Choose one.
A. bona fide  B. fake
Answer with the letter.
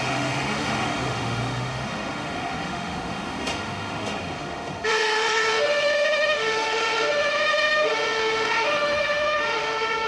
B